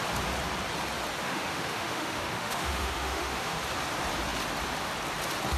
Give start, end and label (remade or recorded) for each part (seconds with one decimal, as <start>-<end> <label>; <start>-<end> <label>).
0.0-1.2 recorded; 1.2-3.6 remade; 3.6-5.6 recorded